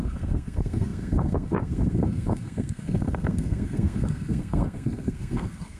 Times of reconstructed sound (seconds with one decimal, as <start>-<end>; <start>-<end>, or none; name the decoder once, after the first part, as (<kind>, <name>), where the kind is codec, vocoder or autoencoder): 0.0-5.8 (codec, SNAC)